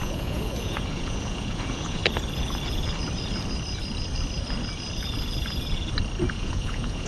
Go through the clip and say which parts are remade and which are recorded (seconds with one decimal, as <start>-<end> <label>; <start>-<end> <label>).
0.0-2.0 remade; 2.0-6.3 recorded; 6.3-7.1 remade